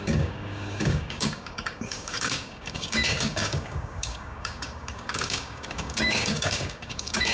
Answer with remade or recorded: remade